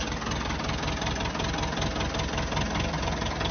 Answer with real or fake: real